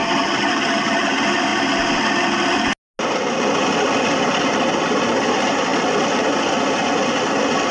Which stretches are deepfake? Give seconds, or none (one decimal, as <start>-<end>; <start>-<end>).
none